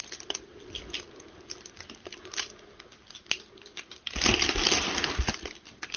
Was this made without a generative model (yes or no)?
yes